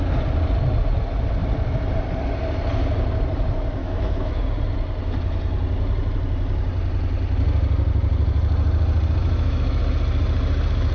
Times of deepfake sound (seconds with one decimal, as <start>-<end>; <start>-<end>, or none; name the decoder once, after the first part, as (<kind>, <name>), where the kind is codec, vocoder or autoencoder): 3.8-4.4 (autoencoder, DAC-VAE); 9.2-9.8